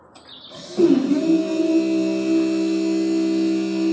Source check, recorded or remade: recorded